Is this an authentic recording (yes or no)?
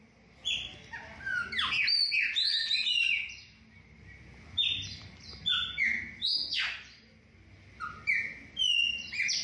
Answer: yes